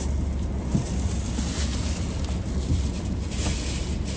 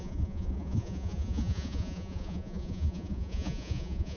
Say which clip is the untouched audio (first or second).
first